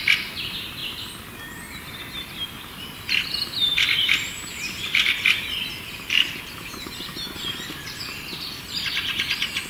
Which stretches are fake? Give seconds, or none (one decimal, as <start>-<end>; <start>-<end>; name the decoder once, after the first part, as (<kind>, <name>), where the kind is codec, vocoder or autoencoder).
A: 3.6-7.8 (vocoder, BigVGAN v2)

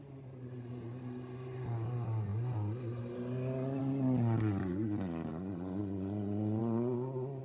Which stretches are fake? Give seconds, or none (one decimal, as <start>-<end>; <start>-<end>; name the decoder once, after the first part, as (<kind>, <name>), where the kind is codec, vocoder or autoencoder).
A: none

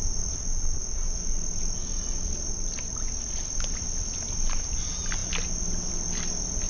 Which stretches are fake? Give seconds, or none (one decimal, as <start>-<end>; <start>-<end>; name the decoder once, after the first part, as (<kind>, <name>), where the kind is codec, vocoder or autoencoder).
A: none